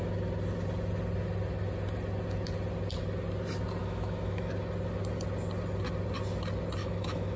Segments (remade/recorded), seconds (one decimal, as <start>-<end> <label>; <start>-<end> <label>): 0.0-3.8 recorded; 3.8-4.5 remade; 4.5-6.8 recorded; 6.8-7.4 remade